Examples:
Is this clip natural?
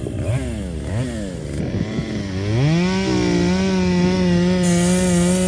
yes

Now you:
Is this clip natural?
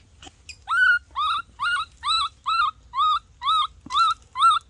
yes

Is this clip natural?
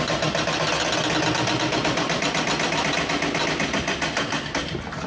yes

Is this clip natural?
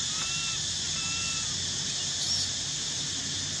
yes